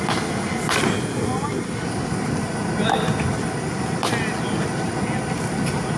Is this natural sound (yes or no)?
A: yes